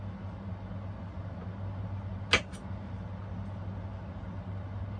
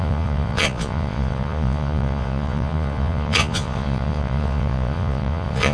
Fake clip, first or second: second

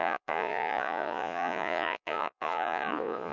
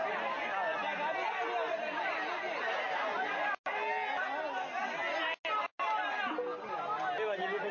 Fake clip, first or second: first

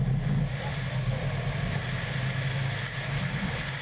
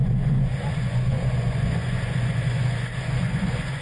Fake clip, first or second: second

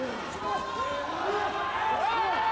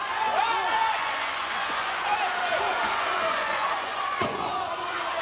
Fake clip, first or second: second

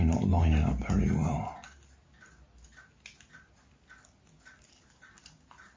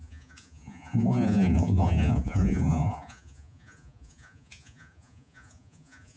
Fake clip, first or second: second